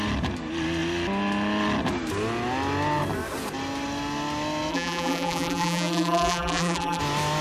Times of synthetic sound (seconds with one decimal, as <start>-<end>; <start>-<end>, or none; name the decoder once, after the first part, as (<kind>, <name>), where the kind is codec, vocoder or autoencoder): 4.7-7.0 (vocoder, BigVGAN v2)